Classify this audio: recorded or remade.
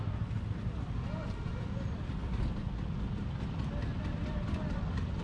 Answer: recorded